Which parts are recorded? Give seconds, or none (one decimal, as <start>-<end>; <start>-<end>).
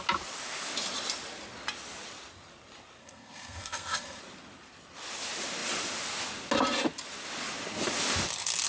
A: 0.0-3.0; 4.2-8.7